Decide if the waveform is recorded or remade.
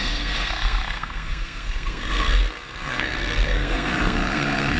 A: remade